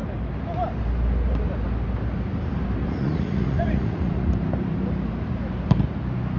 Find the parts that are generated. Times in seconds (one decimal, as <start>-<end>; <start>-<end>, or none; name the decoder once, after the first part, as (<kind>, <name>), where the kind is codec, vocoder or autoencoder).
2.8-4.3 (vocoder, Vocos)